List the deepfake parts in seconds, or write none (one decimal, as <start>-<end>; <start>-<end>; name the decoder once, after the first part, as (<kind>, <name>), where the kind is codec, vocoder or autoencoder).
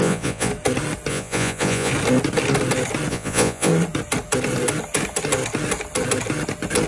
0.0-0.5 (vocoder, Vocos); 1.1-1.9; 3.1-3.7